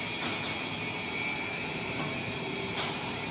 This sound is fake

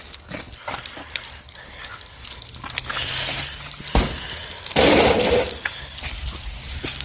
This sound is real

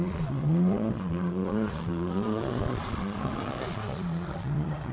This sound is fake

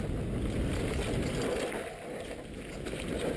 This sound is real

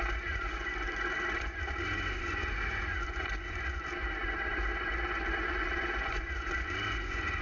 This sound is fake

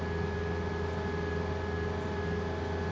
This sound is real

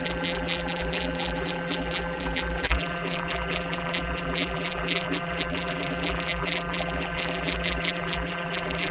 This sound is fake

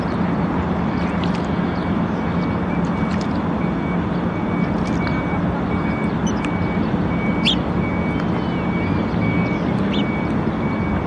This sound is real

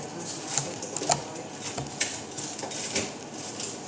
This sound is real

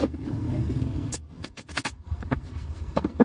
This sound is fake